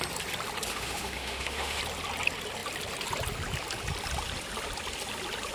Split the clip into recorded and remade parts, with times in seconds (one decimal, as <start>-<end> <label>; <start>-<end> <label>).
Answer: 0.0-0.7 recorded; 0.7-1.8 remade; 1.8-5.5 recorded